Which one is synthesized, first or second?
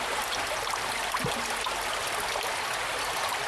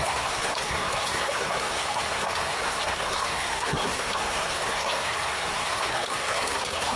second